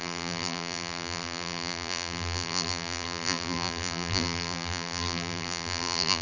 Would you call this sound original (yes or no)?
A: no